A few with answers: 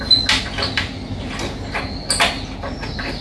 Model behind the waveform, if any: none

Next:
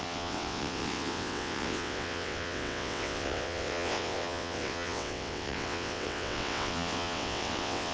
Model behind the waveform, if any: vocoder, WaveNeXt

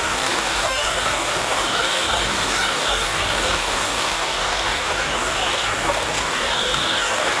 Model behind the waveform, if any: codec, DAC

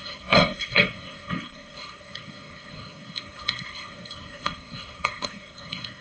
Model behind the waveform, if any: codec, SNAC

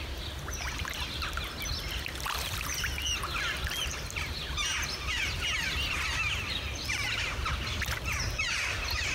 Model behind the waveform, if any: none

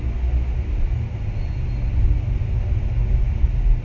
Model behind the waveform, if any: none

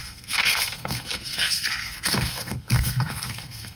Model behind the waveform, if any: codec, SNAC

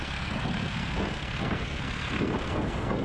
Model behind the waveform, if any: codec, SNAC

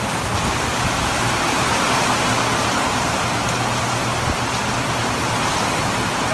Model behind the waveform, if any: none